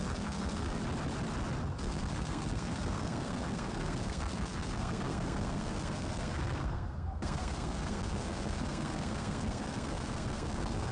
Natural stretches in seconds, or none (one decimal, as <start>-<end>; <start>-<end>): 0.8-1.8